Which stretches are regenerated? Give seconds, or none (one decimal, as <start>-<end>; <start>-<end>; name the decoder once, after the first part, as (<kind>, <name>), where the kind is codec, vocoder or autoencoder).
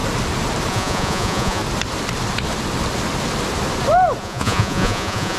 0.7-1.6 (vocoder, Vocos); 4.2-5.4